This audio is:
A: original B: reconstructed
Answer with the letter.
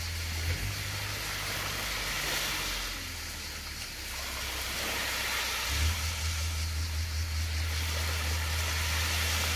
A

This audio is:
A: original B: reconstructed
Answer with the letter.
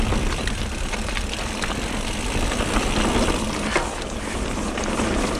A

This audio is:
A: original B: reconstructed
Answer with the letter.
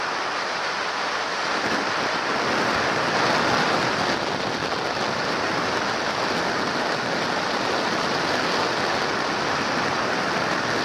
A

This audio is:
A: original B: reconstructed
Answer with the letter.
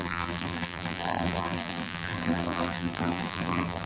B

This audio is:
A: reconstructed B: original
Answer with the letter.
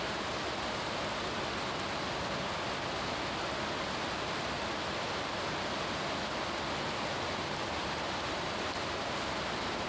B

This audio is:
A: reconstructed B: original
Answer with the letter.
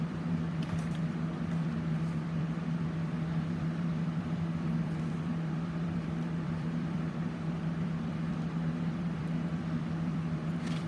A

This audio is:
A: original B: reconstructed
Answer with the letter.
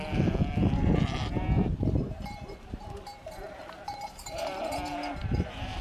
B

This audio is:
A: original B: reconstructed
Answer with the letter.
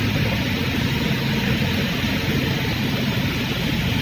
A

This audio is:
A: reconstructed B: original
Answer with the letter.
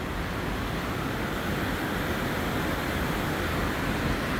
B